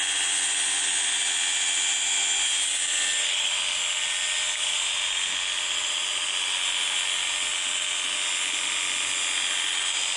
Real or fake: real